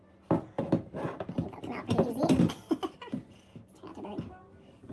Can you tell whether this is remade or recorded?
recorded